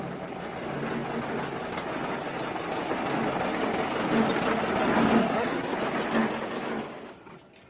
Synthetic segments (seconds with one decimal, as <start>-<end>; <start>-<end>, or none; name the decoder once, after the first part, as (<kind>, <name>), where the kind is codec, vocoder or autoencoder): 5.2-5.8 (codec, SNAC)